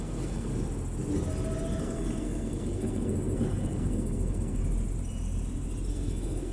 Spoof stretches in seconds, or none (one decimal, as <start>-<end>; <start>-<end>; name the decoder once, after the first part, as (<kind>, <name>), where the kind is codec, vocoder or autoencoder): 0.0-0.5 (codec, SNAC); 1.8-4.6; 5.9-6.5